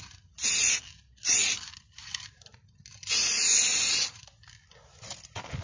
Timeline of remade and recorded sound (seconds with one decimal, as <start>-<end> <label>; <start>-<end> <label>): 0.0-5.6 recorded